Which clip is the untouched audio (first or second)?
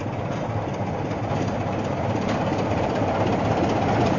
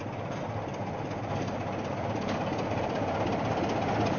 second